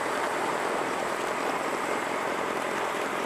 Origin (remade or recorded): remade